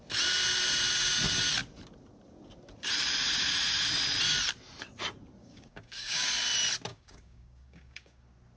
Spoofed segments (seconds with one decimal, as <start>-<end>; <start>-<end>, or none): 5.4-6.3; 6.9-8.2